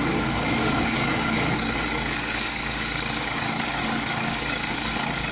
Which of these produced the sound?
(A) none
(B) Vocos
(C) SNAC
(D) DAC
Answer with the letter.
D